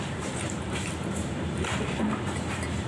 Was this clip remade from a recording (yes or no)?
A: yes